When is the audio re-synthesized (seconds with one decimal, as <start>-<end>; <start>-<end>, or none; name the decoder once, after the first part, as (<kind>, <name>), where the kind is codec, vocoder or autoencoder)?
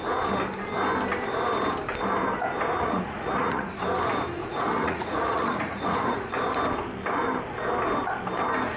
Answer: 2.7-3.8 (vocoder, Vocos); 4.4-6.3